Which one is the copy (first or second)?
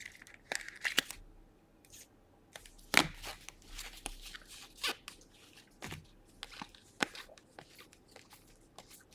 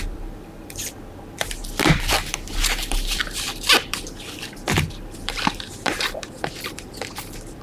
second